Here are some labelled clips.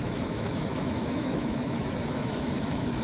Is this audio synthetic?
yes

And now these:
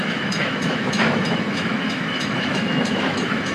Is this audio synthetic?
yes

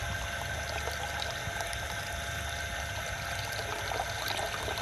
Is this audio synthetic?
no